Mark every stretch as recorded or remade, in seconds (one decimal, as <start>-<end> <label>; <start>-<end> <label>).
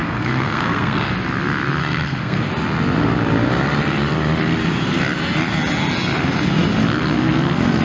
0.0-1.1 remade; 1.1-1.8 recorded; 1.8-2.5 remade; 2.5-7.8 recorded